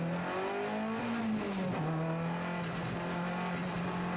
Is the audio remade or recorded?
recorded